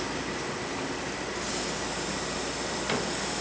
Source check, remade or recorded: recorded